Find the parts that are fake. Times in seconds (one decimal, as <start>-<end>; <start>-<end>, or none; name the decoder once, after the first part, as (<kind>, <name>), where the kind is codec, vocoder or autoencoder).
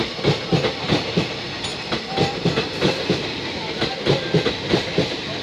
none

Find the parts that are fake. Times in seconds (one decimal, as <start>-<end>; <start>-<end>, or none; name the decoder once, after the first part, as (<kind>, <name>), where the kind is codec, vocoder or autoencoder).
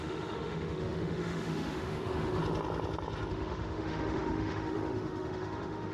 0.0-2.4 (autoencoder, DAC-VAE); 3.3-5.9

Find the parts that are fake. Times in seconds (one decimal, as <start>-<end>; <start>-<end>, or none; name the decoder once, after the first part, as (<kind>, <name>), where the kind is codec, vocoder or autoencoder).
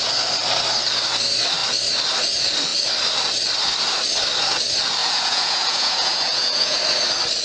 5.0-6.8 (vocoder, Vocos)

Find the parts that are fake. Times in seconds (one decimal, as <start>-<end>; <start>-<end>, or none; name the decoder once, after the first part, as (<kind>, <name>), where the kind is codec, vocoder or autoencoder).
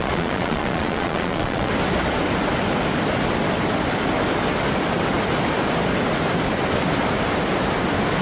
0.0-1.7 (vocoder, Vocos)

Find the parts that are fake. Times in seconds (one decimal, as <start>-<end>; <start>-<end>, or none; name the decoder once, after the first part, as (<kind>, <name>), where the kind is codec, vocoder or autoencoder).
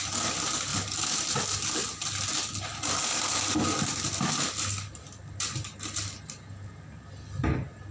0.7-2.3 (vocoder, BigVGAN v2); 2.7-7.4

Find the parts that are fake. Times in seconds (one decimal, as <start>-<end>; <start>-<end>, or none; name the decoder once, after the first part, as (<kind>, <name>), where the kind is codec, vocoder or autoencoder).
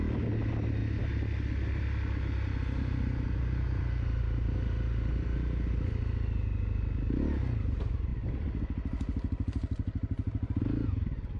none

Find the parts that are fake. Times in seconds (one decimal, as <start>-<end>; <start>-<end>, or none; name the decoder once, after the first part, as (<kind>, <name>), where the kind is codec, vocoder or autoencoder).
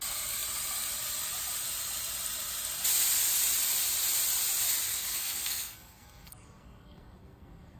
4.9-7.8 (codec, SNAC)